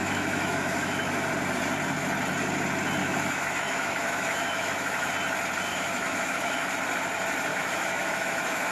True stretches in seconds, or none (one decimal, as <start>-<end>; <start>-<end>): 1.3-3.0; 5.1-5.7; 6.7-7.5